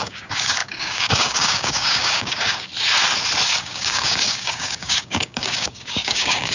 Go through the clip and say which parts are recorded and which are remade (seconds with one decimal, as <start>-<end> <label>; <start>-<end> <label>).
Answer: 0.0-2.7 remade; 2.7-3.6 recorded; 3.6-6.5 remade